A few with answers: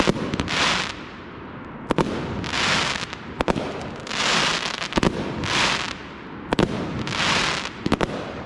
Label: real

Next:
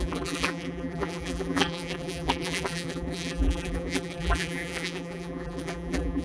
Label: fake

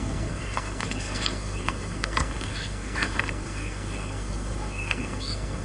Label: fake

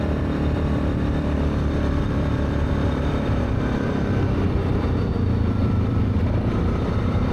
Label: fake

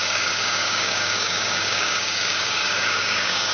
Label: fake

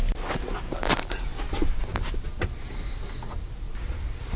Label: real